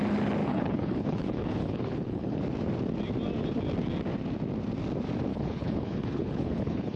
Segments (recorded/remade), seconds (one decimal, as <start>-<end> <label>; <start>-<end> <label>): 0.0-0.4 recorded; 0.4-2.4 remade; 2.4-5.3 recorded; 5.3-7.0 remade